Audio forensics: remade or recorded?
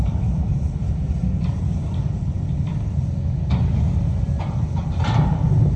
recorded